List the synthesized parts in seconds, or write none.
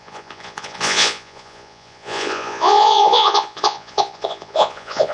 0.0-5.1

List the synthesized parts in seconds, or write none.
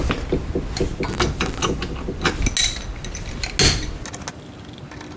none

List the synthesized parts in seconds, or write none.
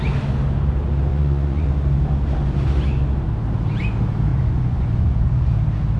1.1-1.7; 4.3-5.5